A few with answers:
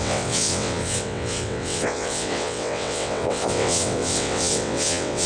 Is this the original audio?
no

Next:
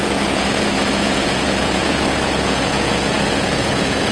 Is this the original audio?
no